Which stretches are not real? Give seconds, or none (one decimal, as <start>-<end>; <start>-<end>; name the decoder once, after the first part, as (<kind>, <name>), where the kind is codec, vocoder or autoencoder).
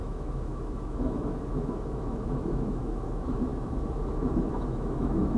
0.0-5.4 (autoencoder, DAC-VAE)